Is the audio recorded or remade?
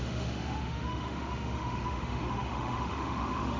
remade